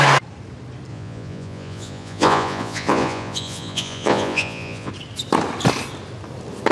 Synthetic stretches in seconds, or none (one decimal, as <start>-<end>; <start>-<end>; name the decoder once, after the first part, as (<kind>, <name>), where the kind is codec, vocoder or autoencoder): 0.9-4.9 (vocoder, Vocos)